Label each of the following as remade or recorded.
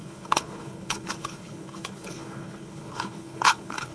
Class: remade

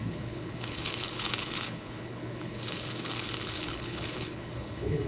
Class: remade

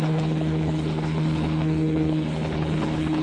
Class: remade